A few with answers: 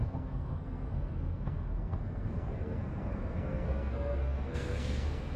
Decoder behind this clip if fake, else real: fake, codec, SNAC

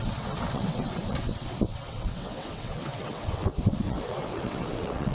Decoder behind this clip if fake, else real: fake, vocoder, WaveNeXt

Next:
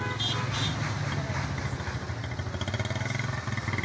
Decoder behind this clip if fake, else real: real